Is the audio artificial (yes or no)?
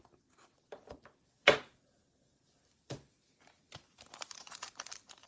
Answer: no